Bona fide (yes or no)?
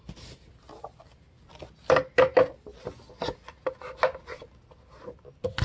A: yes